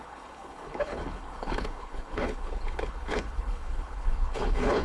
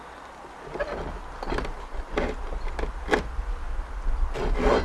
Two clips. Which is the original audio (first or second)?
second